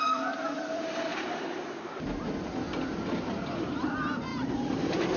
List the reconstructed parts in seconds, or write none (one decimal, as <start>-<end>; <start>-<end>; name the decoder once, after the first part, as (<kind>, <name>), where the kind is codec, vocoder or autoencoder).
1.1-2.2 (vocoder, BigVGAN v2); 4.3-5.2

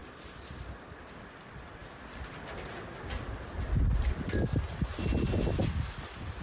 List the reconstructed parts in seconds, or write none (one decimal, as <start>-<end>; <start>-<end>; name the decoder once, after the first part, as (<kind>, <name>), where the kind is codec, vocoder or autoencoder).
1.2-1.8 (vocoder, BigVGAN v2); 5.6-6.4

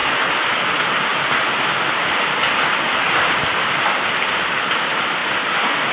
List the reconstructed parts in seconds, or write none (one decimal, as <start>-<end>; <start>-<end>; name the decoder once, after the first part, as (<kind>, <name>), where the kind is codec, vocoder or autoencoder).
none

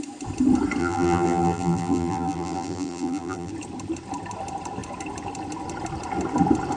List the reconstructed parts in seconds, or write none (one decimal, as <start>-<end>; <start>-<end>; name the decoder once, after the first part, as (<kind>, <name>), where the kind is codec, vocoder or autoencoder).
0.8-3.5 (vocoder, BigVGAN v2)